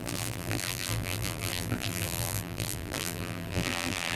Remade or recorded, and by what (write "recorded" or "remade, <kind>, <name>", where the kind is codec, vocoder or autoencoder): remade, vocoder, BigVGAN v2